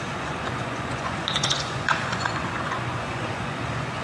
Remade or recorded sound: remade